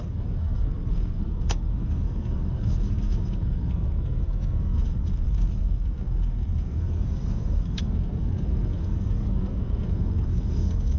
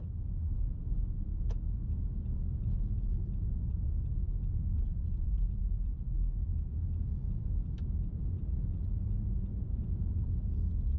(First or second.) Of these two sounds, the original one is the second